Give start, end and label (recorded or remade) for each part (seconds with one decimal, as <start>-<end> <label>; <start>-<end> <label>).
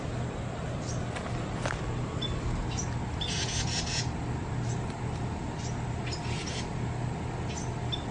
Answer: 0.0-8.1 recorded